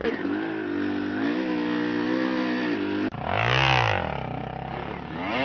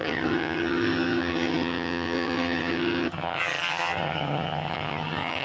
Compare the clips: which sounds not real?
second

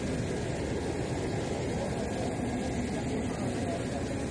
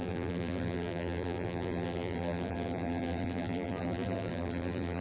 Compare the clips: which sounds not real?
second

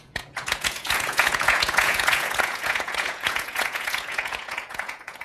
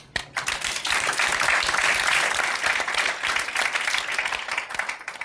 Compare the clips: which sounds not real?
first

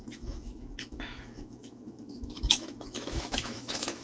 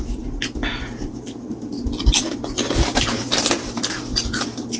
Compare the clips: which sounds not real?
first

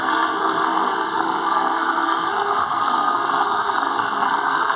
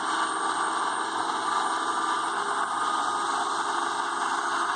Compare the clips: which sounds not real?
first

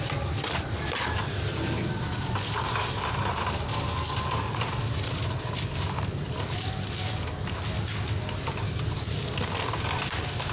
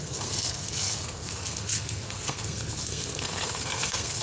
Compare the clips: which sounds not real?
second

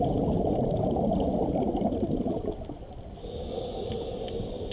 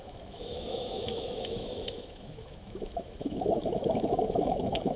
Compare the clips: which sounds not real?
second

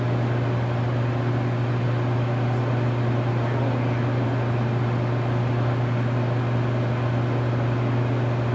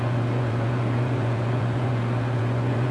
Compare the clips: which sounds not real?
second